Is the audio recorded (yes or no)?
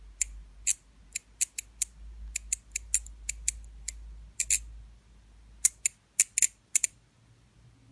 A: yes